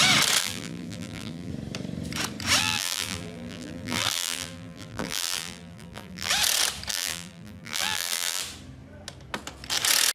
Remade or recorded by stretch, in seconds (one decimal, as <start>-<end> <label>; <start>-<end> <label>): 0.0-0.4 recorded; 0.4-1.5 remade; 1.5-2.6 recorded; 2.6-6.3 remade; 6.3-6.9 recorded; 6.9-8.4 remade; 8.4-10.1 recorded